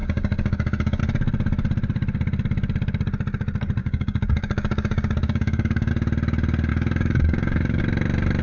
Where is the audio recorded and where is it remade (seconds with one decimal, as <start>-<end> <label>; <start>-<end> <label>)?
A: 0.0-1.0 remade; 1.0-3.8 recorded; 3.8-5.9 remade; 5.9-6.7 recorded; 6.7-7.8 remade; 7.8-8.4 recorded